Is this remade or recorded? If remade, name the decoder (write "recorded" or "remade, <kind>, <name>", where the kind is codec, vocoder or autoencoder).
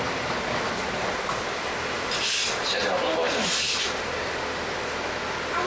recorded